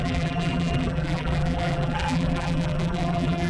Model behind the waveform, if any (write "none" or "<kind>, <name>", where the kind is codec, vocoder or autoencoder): vocoder, BigVGAN v2